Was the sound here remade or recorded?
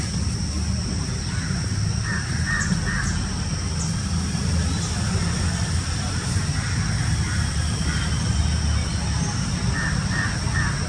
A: recorded